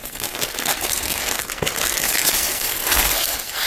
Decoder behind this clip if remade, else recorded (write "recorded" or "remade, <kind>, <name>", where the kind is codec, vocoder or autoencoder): remade, codec, SNAC